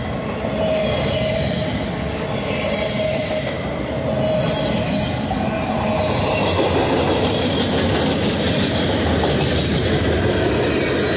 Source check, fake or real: real